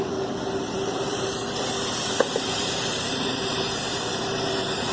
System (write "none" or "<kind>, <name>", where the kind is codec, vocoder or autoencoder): vocoder, BigVGAN v2